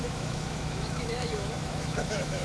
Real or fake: fake